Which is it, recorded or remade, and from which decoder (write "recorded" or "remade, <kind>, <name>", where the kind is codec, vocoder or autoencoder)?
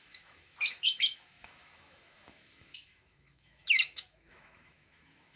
remade, autoencoder, DAC-VAE